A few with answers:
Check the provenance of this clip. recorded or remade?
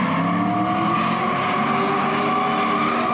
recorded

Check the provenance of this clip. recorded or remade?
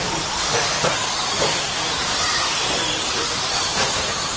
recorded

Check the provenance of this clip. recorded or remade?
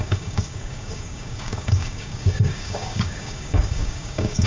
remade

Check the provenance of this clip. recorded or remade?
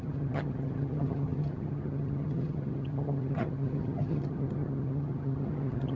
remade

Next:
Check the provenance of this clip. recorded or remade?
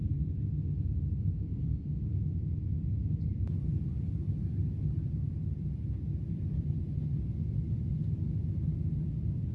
recorded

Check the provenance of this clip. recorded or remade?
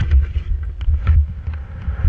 recorded